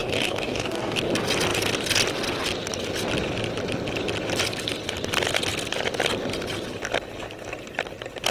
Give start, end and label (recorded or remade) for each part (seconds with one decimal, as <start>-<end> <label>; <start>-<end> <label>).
0.0-1.0 remade; 1.0-8.3 recorded